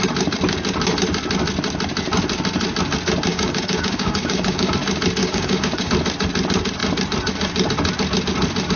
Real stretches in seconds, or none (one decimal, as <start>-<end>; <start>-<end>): 0.0-3.3; 4.7-5.2; 5.9-8.8